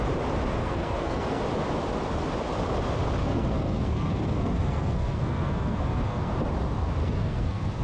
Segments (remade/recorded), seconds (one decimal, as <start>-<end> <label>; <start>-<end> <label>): 0.0-0.6 recorded; 0.6-1.4 remade; 1.4-3.2 recorded; 3.2-6.3 remade; 6.3-7.0 recorded; 7.0-7.8 remade

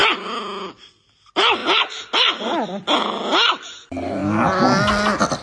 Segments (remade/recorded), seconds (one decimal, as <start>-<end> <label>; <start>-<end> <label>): 0.0-5.4 recorded

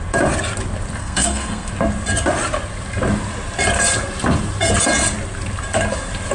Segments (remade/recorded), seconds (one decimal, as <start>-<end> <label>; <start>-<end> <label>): 0.0-1.0 recorded; 1.0-1.7 remade; 1.7-6.3 recorded

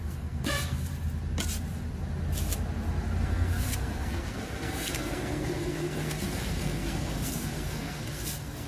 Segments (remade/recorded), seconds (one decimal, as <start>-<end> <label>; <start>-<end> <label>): 0.0-0.9 remade; 0.9-3.2 recorded; 3.2-8.7 remade

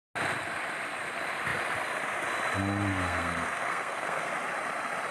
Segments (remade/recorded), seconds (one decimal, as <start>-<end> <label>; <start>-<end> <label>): 0.0-2.9 recorded; 2.9-4.3 remade; 4.3-5.1 recorded

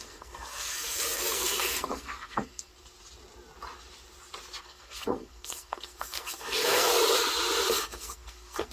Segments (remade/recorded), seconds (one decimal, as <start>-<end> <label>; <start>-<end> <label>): 0.0-2.7 remade; 2.7-4.6 recorded; 4.6-6.9 remade; 6.9-7.7 recorded; 7.7-8.7 remade

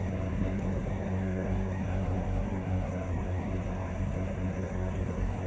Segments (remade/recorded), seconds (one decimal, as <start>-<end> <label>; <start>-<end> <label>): 0.0-5.5 remade